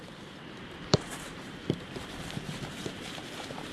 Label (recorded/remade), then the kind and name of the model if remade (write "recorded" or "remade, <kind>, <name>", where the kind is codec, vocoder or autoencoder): remade, vocoder, BigVGAN v2